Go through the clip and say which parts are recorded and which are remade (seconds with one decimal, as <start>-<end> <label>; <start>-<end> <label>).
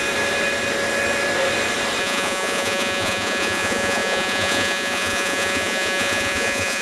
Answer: 0.0-2.0 recorded; 2.0-6.8 remade